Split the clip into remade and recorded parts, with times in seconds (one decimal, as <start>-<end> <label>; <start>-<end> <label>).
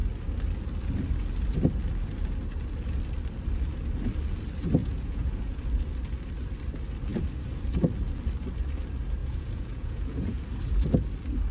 0.0-4.8 recorded; 4.8-5.6 remade; 5.6-9.2 recorded; 9.2-10.4 remade; 10.4-11.5 recorded